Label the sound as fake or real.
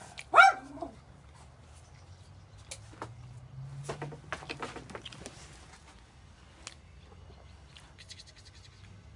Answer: real